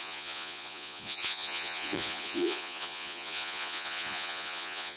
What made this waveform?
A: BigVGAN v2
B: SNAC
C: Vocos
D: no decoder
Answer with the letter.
C